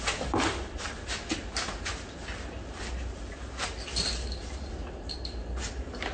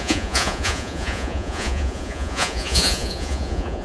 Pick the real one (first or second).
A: first